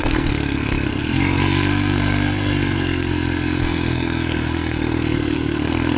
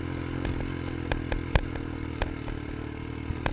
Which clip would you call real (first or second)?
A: second